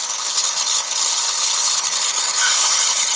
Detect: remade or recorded remade